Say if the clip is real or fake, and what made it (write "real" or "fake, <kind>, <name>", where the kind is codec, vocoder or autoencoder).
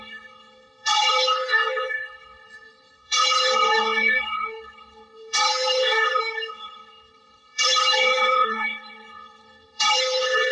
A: fake, codec, HILCodec